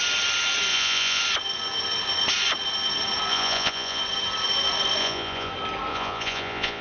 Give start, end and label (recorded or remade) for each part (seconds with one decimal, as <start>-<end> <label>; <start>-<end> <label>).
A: 0.0-0.7 recorded; 0.7-1.2 remade; 1.2-3.3 recorded; 3.3-4.0 remade; 4.0-5.0 recorded; 5.0-5.5 remade; 5.5-5.9 recorded; 5.9-6.8 remade